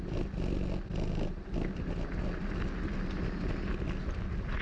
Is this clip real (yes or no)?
yes